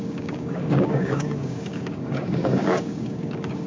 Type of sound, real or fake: fake